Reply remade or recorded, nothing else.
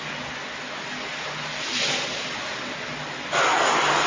recorded